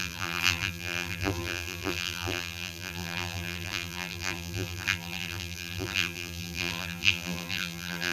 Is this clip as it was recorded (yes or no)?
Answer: no